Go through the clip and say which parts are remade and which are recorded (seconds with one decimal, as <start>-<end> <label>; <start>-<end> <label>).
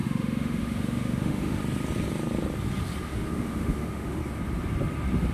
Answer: 0.0-1.6 remade; 1.6-3.0 recorded; 3.0-4.2 remade; 4.2-5.3 recorded